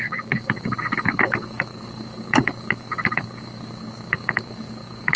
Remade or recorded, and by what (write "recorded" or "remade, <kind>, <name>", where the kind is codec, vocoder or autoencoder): remade, codec, DAC